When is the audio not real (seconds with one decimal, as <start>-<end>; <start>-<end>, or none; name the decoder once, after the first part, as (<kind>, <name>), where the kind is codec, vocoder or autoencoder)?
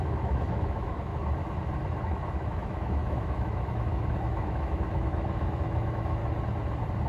0.0-1.1 (autoencoder, DAC-VAE); 2.0-6.2